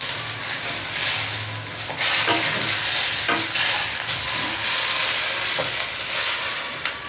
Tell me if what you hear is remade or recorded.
recorded